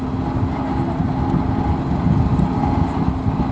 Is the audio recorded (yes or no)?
yes